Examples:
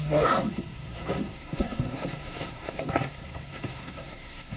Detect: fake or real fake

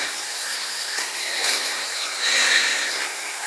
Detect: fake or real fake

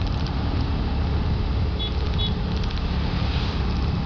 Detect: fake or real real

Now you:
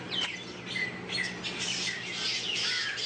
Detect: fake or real real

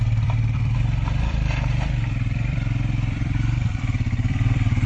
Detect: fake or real fake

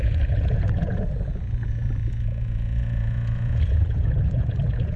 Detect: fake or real fake